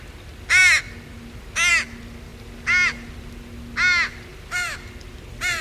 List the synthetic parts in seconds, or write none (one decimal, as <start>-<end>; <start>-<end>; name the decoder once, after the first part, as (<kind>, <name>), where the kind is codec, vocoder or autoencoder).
4.3-5.6 (vocoder, BigVGAN v2)

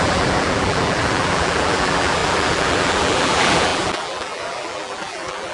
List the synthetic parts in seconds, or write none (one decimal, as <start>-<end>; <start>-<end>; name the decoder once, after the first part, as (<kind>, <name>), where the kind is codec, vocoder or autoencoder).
0.0-5.5 (vocoder, BigVGAN v2)

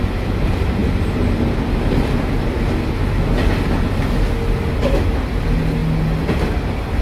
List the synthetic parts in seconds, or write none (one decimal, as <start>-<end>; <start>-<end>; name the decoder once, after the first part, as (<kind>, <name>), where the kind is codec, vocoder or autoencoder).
none

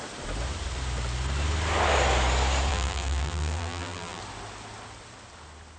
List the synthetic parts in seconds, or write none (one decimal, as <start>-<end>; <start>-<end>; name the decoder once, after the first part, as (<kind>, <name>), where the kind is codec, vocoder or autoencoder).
2.7-4.2 (vocoder, BigVGAN v2)

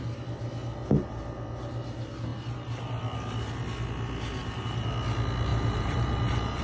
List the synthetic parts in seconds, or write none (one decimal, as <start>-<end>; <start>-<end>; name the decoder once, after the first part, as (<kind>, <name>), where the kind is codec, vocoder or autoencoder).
4.4-4.9 (vocoder, BigVGAN v2); 5.5-6.6

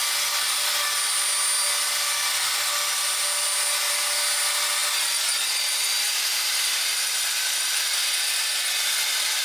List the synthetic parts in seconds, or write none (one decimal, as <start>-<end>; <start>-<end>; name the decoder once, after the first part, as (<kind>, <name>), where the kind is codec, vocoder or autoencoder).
4.8-9.4 (vocoder, BigVGAN v2)

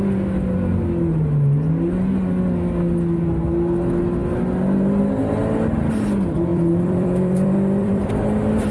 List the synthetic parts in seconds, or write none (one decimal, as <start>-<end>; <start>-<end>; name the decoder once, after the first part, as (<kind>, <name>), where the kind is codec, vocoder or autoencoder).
6.5-8.1 (vocoder, BigVGAN v2)

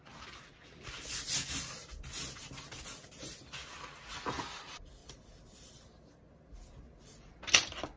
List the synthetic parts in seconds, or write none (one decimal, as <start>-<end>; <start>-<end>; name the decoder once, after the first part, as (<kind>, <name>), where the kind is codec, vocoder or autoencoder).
none